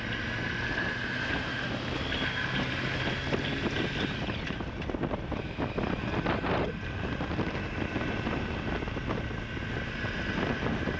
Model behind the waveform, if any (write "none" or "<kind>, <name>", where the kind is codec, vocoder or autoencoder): none